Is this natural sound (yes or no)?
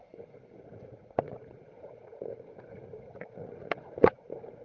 no